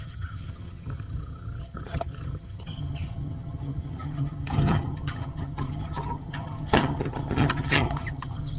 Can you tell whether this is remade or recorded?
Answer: remade